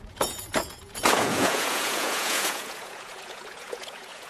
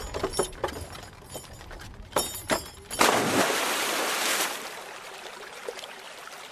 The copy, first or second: first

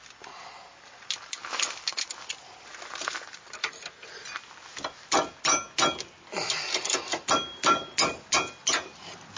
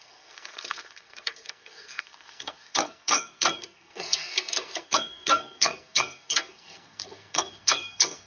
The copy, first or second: second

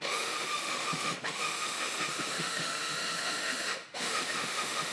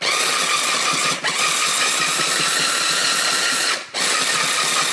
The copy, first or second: first